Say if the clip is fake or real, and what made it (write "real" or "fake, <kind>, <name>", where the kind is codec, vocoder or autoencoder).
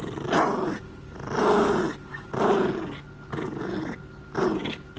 real